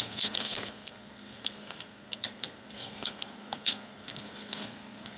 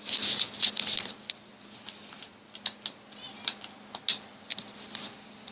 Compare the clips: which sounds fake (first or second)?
first